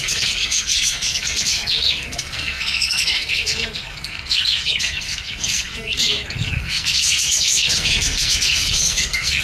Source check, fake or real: fake